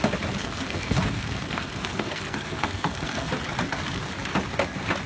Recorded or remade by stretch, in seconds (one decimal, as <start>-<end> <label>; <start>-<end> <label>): 0.0-0.4 recorded; 0.4-3.3 remade; 3.3-5.1 recorded